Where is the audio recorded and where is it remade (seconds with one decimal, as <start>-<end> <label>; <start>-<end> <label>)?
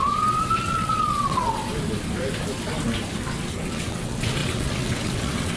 0.0-1.6 remade; 1.6-3.5 recorded; 3.5-5.6 remade